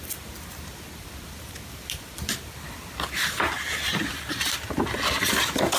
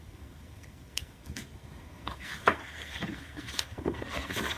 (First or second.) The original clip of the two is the first